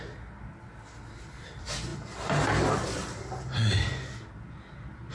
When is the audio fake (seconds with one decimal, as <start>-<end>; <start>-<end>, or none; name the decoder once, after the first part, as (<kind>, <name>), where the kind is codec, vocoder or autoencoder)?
none